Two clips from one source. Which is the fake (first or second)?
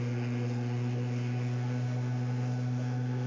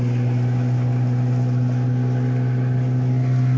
first